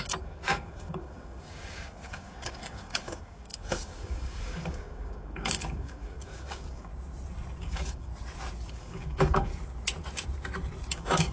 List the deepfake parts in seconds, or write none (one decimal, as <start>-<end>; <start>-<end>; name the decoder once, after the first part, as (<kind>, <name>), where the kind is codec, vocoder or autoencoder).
0.0-6.9 (codec, DAC); 7.6-8.1; 8.7-9.5; 10.9-11.3